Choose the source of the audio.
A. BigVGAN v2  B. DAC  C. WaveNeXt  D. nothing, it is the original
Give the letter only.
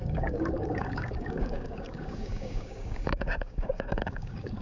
B